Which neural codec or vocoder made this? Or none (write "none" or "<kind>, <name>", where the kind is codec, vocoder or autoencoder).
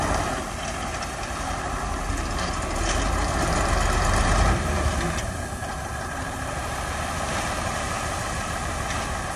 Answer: vocoder, BigVGAN v2